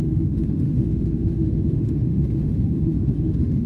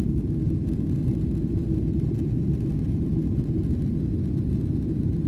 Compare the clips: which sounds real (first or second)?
second